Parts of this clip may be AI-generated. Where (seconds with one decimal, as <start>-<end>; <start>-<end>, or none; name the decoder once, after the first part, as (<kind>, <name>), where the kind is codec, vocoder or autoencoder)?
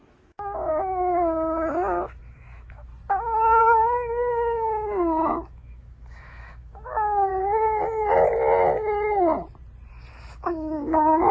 0.0-2.9 (autoencoder, DAC-VAE); 3.6-7.3; 10.1-11.3